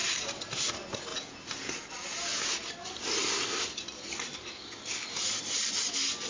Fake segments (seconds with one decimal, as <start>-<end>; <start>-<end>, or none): 1.1-1.9